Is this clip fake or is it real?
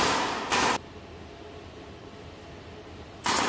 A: real